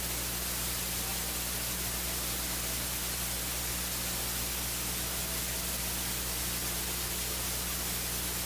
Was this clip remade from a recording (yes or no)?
no